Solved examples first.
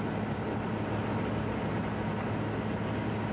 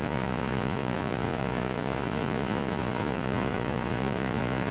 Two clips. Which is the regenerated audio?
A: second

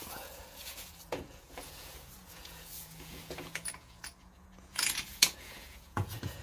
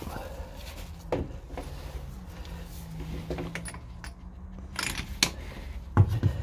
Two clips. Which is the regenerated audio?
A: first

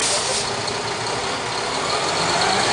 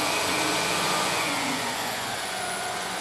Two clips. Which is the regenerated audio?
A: second